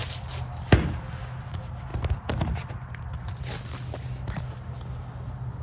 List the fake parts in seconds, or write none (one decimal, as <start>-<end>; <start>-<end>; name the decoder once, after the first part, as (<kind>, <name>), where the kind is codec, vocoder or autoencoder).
none